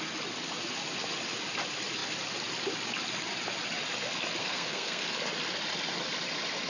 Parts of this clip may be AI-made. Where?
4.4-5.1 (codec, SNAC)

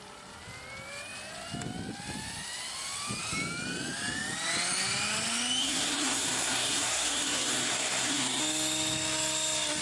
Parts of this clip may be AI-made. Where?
5.6-8.4 (codec, SNAC)

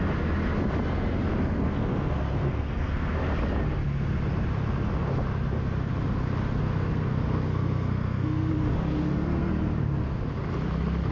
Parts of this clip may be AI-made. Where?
1.4-3.1 (codec, SNAC); 6.6-8.5; 8.9-9.5

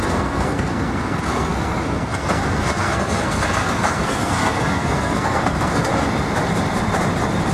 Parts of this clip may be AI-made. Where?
0.0-5.9 (codec, SNAC)

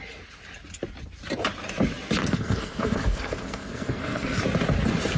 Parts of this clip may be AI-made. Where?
2.2-4.4 (codec, SNAC)

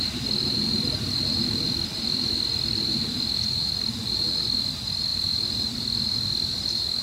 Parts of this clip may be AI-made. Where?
none